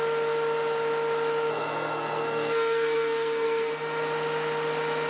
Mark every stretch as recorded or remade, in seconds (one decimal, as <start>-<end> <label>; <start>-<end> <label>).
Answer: 0.0-1.5 recorded; 1.5-3.7 remade; 3.7-5.1 recorded